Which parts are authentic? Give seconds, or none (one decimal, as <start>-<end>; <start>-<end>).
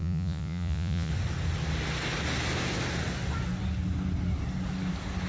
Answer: 1.1-5.3